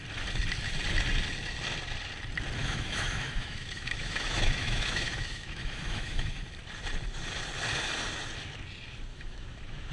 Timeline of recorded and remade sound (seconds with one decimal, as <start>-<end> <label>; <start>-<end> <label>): 0.0-2.6 recorded; 2.6-6.3 remade; 6.3-9.1 recorded; 9.1-9.9 remade